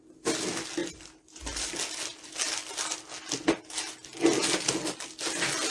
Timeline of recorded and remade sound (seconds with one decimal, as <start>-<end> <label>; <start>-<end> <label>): 0.0-5.7 recorded